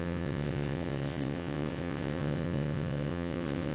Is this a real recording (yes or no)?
no